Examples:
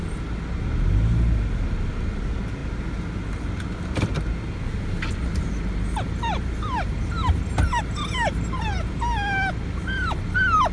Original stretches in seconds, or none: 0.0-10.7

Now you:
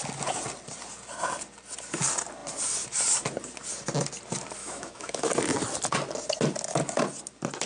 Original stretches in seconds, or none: 0.0-4.6; 5.3-7.7

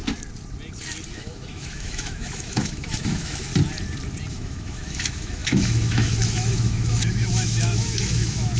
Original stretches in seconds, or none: 0.0-1.1; 3.5-4.3

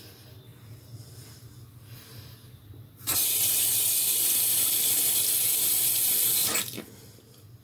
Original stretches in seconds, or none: 0.0-7.6

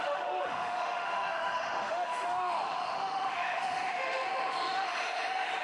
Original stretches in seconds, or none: none

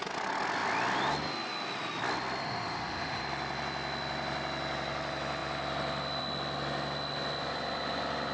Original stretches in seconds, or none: 0.0-2.4; 3.2-8.3

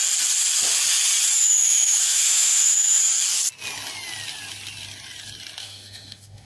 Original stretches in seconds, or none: 0.0-1.4; 3.0-5.6

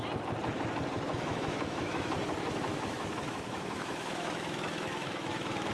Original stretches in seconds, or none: 0.0-1.1; 2.1-2.7